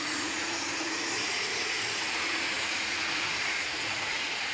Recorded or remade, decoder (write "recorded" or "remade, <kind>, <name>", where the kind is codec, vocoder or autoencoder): remade, vocoder, Vocos